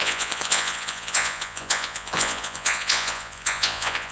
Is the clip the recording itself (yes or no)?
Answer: no